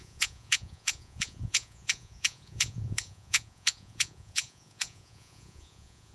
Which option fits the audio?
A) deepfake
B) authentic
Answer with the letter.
A